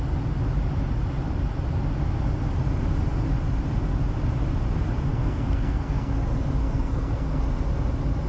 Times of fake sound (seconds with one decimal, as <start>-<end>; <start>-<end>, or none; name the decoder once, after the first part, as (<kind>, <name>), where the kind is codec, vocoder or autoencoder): 5.1-6.1 (codec, SNAC); 6.6-7.4